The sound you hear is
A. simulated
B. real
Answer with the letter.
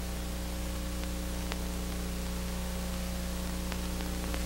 B